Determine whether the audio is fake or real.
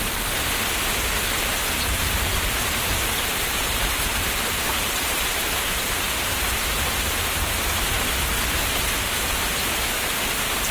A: fake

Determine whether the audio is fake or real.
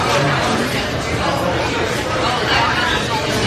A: fake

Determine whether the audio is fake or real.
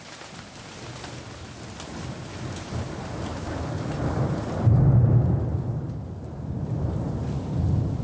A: real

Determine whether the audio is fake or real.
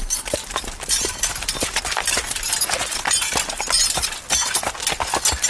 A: real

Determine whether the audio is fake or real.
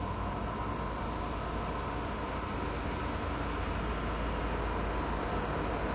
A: real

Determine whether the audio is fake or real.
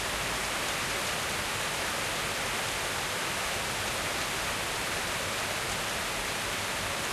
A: real